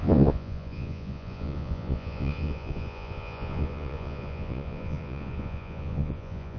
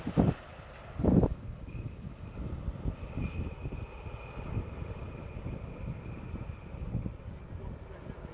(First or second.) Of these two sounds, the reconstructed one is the first